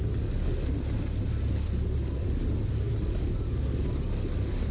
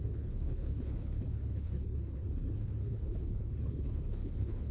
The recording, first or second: first